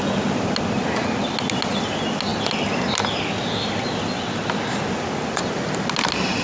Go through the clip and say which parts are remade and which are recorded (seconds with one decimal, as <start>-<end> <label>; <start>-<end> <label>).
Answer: 0.0-6.4 recorded